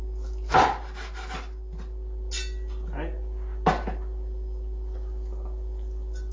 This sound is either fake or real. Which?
real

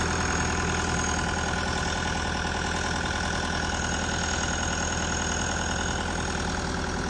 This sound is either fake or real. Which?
real